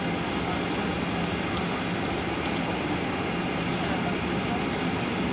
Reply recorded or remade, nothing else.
recorded